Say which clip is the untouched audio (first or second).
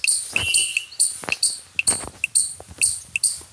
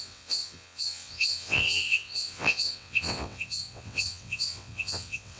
first